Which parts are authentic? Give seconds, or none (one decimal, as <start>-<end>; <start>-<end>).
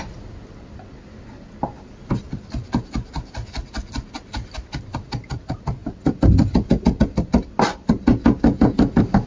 0.0-9.3